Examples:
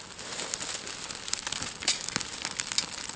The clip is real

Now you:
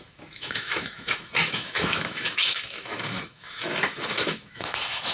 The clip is fake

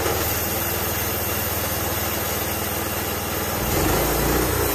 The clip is real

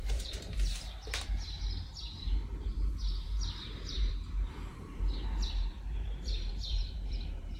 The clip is fake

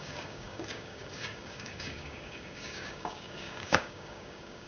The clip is fake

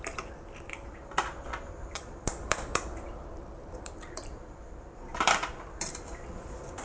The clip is fake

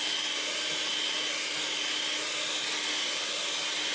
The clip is real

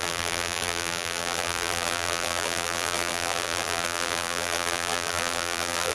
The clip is fake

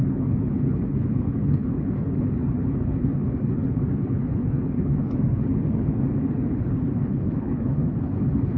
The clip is fake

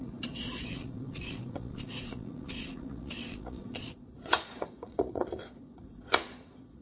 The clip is fake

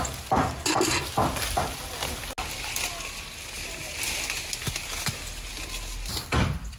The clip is real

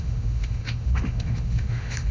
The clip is fake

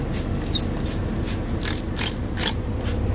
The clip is real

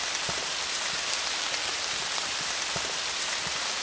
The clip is fake